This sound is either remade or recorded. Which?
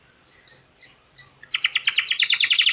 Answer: recorded